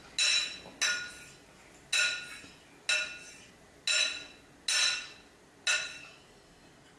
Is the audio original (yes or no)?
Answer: yes